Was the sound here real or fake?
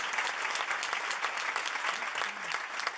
real